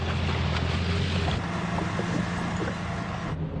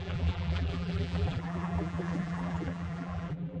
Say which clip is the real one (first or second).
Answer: first